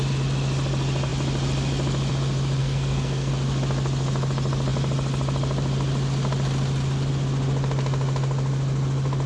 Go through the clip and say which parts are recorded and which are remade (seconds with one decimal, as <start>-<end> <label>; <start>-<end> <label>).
0.0-2.6 recorded; 2.6-3.3 remade; 3.3-9.3 recorded